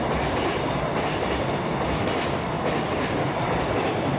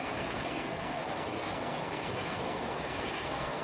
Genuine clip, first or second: first